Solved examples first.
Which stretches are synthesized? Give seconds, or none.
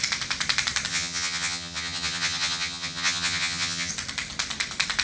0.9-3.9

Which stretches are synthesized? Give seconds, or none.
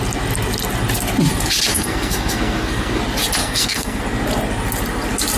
1.7-3.0; 3.4-4.0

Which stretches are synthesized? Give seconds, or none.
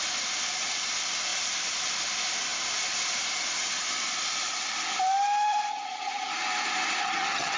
5.7-6.3; 7.0-7.6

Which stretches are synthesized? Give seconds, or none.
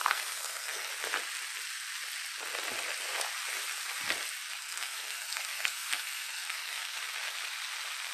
0.0-0.9; 4.6-7.0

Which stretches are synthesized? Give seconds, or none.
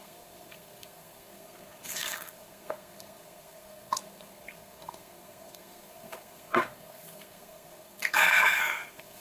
0.0-9.2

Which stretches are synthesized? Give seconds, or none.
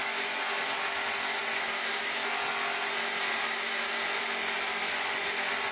none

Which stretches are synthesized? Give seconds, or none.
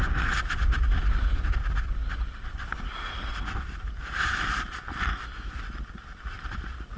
5.1-5.6